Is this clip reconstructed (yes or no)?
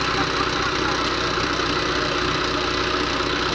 no